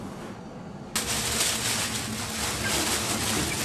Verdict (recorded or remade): recorded